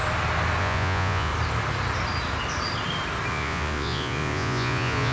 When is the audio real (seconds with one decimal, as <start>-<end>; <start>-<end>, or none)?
0.0-0.6; 1.3-3.3